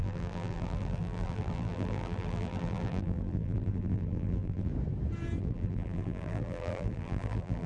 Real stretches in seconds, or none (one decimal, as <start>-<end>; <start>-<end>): 4.7-5.4